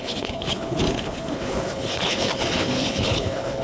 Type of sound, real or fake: fake